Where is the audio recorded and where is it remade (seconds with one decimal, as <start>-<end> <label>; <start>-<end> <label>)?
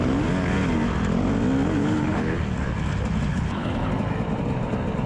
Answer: 0.0-1.8 recorded; 1.8-2.4 remade; 2.4-3.3 recorded; 3.3-3.9 remade; 3.9-5.1 recorded